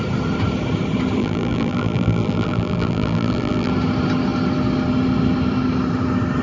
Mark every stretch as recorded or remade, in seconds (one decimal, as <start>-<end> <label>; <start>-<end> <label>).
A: 0.0-1.2 recorded; 1.2-3.7 remade; 3.7-6.4 recorded